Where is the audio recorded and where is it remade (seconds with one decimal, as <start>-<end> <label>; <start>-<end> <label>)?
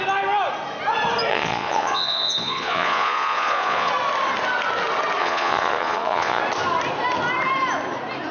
0.0-1.3 recorded; 1.3-3.9 remade; 3.9-5.2 recorded; 5.2-6.4 remade; 6.4-8.3 recorded